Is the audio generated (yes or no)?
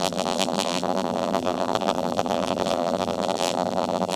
yes